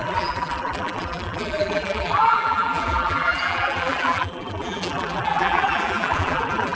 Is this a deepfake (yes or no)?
yes